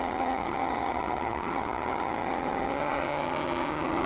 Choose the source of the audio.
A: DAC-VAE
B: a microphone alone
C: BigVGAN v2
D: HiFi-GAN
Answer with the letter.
D